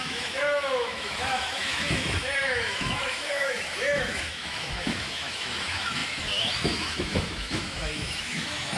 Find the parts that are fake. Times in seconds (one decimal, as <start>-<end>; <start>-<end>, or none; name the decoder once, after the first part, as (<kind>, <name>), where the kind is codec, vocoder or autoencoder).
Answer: 0.0-8.8 (autoencoder, DAC-VAE)